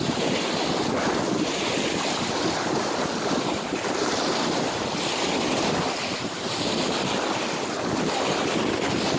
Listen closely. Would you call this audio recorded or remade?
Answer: recorded